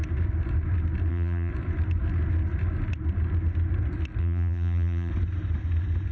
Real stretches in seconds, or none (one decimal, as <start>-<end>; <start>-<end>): 0.0-1.1; 1.5-4.2; 5.1-6.1